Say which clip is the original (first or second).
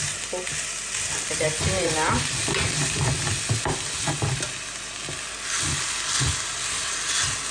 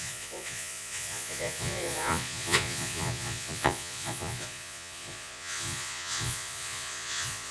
first